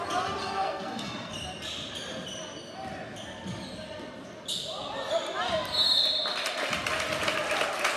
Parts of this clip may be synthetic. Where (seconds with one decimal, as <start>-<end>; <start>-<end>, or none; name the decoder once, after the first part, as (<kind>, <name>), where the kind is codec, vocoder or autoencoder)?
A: 0.4-1.3 (codec, SNAC)